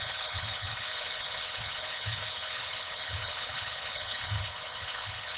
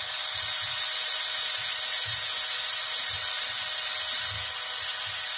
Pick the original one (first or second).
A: second